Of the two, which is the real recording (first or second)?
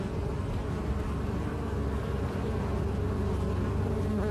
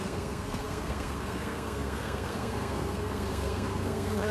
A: first